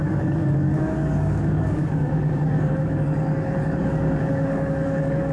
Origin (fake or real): fake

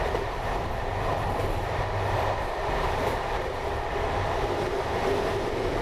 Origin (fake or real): fake